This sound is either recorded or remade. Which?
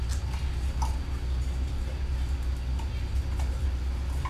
recorded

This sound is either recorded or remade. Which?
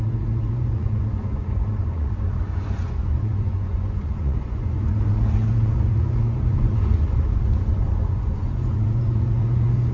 remade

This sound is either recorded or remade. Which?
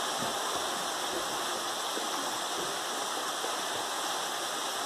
recorded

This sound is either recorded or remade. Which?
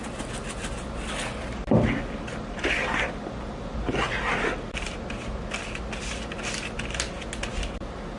recorded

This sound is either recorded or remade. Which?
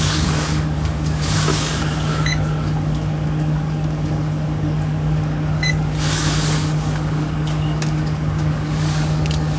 remade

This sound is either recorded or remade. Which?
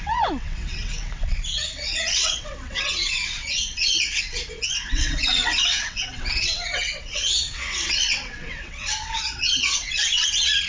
remade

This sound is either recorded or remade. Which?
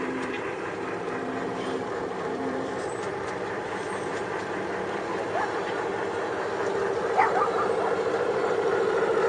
remade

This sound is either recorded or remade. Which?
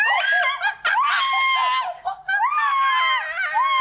recorded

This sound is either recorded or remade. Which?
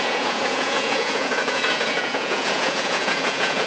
remade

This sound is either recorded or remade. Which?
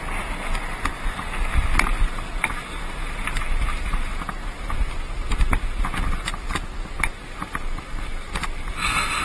recorded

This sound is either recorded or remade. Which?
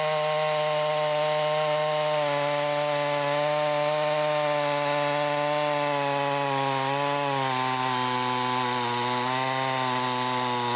recorded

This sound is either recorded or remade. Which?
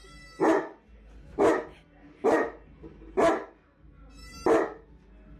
recorded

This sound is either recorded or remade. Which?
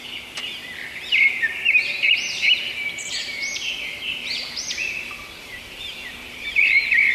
remade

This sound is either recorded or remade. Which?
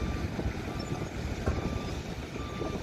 recorded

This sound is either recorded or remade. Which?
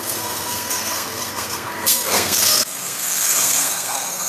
remade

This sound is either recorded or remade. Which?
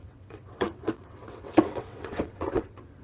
remade